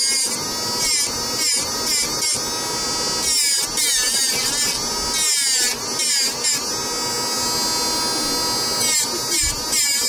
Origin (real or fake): real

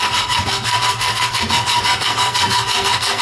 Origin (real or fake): fake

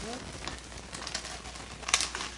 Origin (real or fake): real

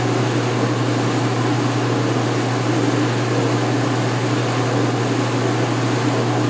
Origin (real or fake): real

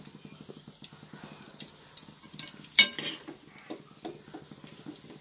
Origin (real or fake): real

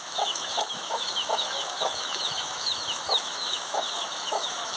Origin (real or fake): fake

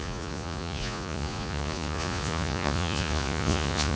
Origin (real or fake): fake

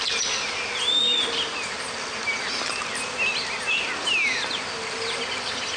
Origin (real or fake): real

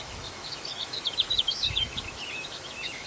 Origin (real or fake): fake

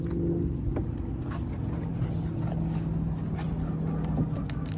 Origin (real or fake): real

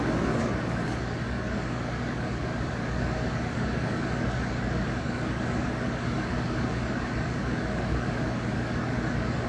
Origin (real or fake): fake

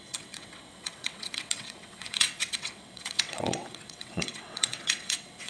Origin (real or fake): fake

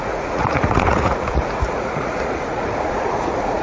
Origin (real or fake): fake